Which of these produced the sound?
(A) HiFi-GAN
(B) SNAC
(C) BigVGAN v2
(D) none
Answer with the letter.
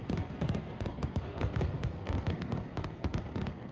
B